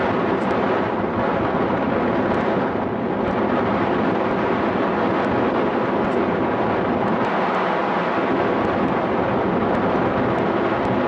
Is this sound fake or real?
real